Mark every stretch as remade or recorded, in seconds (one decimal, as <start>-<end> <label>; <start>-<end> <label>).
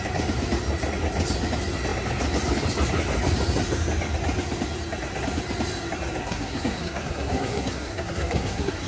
0.0-6.2 recorded; 6.2-8.9 remade